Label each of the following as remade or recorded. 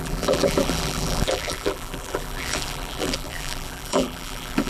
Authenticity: remade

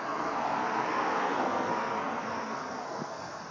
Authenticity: remade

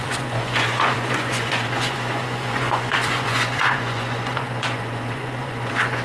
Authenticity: remade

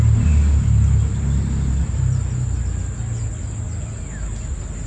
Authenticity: recorded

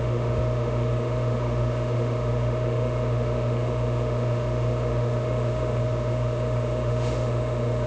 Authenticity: remade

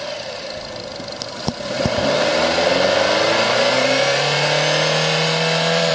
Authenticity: remade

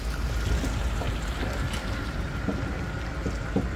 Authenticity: recorded